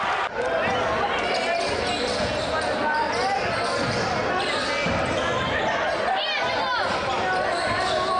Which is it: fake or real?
real